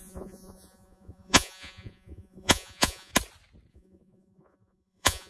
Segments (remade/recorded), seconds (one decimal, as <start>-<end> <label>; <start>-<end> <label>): 0.0-3.1 remade; 3.1-3.7 recorded; 3.7-5.3 remade